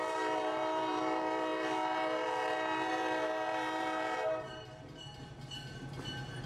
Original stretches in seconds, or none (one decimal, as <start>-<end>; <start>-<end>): none